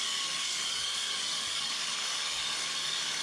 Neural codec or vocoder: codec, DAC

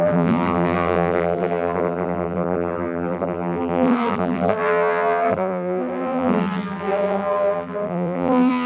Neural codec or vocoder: vocoder, BigVGAN v2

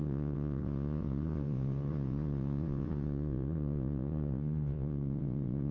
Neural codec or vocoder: vocoder, Vocos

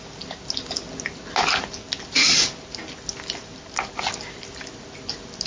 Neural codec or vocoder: none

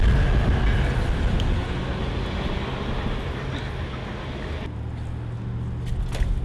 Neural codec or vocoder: none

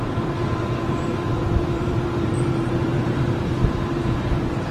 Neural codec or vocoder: vocoder, BigVGAN v2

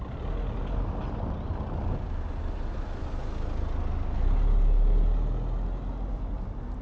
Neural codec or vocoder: none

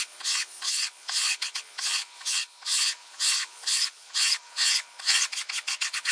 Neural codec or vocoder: vocoder, Vocos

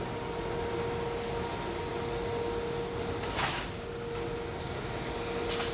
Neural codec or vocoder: none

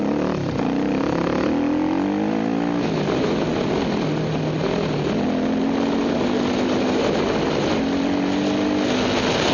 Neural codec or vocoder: none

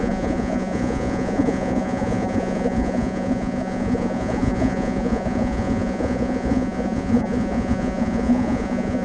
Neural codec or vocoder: vocoder, Vocos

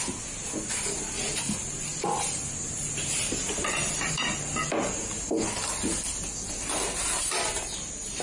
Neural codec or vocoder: none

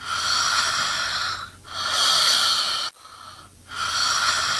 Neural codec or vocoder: none